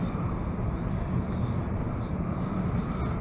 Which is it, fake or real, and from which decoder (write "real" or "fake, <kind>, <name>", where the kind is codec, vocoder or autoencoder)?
real